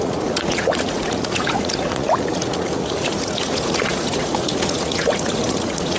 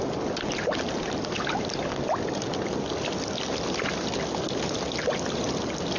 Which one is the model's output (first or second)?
first